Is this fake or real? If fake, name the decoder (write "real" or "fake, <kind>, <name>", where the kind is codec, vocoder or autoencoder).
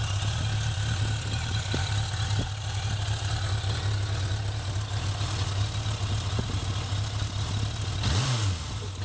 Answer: real